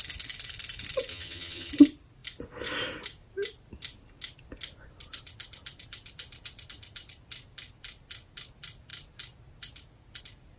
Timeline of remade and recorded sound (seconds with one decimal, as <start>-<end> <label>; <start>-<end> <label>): 0.0-1.1 recorded; 1.1-1.7 remade; 1.7-10.6 recorded